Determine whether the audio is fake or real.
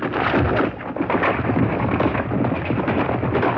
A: real